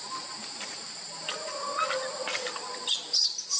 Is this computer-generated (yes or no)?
no